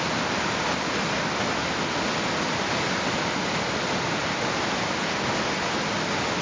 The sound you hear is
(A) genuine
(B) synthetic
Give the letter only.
A